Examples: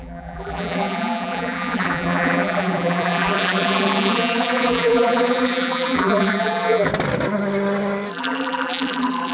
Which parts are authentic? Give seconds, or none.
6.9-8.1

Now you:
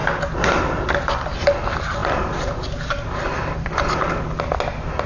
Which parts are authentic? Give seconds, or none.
0.6-2.0; 4.6-5.1

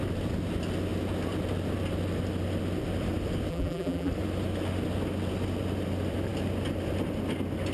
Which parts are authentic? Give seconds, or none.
0.0-3.5; 4.1-7.7

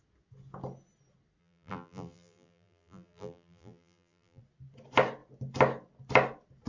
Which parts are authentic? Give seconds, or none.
0.0-1.4; 4.4-6.7

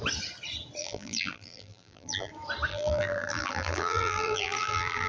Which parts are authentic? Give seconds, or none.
0.0-0.8; 2.3-2.7

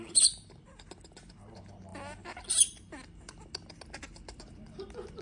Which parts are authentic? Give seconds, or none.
0.0-5.2

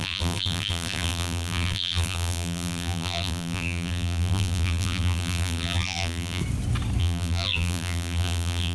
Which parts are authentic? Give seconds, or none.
6.4-7.0